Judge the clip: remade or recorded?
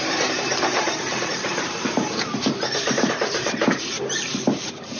remade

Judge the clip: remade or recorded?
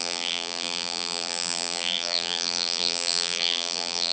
remade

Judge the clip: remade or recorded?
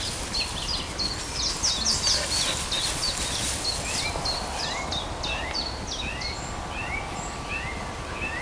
recorded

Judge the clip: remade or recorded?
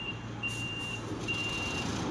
remade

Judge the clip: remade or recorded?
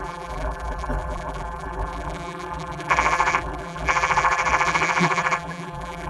remade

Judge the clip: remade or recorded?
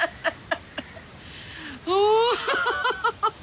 recorded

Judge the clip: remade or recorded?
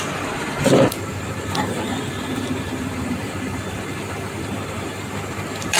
remade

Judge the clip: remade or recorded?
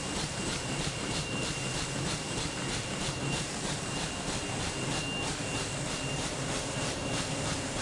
remade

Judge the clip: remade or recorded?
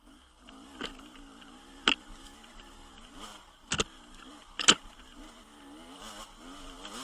recorded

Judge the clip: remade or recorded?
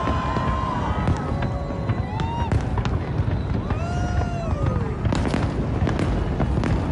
recorded